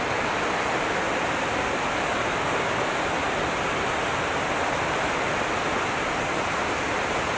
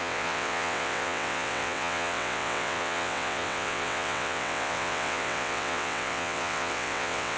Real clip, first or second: first